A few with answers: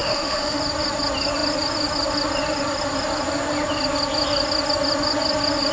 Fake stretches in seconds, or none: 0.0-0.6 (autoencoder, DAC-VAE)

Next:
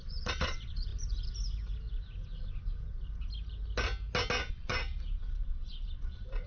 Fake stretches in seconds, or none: 0.0-0.9 (vocoder, Vocos); 4.5-6.5

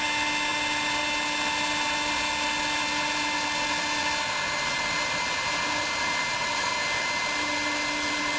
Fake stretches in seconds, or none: none

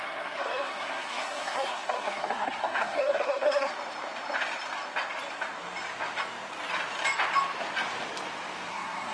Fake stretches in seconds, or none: 0.0-3.7 (codec, SNAC); 8.7-9.1

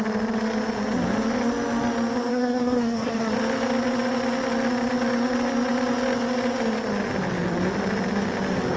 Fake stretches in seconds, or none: 2.3-3.3 (codec, SNAC)

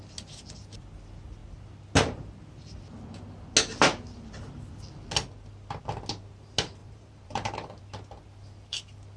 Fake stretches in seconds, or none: 6.8-7.8 (vocoder, BigVGAN v2)

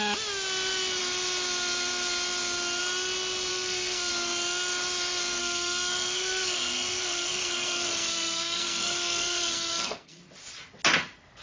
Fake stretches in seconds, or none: 3.5-4.1 (codec, SNAC); 5.4-10.2

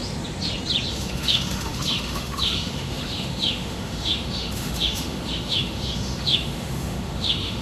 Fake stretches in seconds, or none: 0.9-7.6 (autoencoder, DAC-VAE)